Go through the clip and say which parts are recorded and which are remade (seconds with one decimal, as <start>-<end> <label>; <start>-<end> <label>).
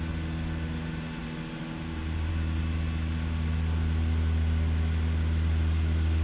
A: 0.0-1.2 recorded; 1.2-2.3 remade; 2.3-6.2 recorded